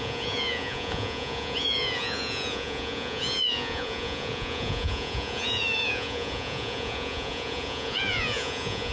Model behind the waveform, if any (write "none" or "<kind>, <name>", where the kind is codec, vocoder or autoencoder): vocoder, Vocos